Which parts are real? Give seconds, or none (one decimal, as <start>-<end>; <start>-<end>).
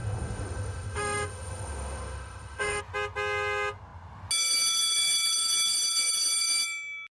2.8-7.1